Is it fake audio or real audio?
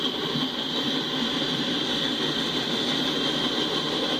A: real